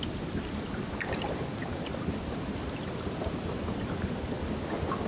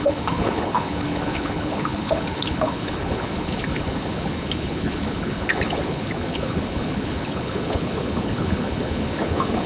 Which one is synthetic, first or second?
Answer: second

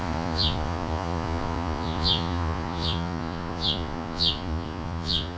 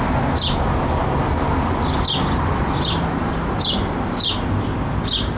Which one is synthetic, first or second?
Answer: first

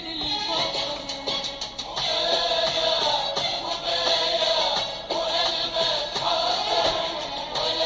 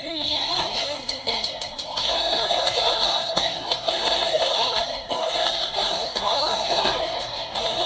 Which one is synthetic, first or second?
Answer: second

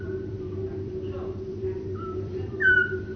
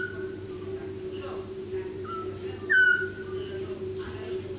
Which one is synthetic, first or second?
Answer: first